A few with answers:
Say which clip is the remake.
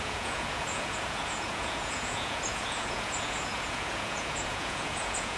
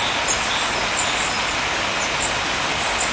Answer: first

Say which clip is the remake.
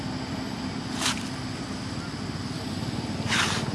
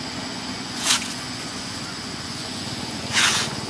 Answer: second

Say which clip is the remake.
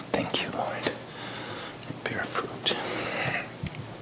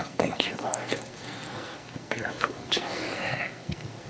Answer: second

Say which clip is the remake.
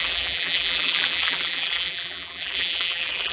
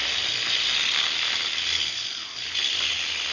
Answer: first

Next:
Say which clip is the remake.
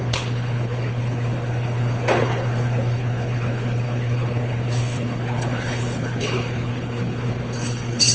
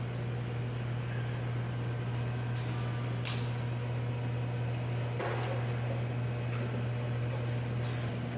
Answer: first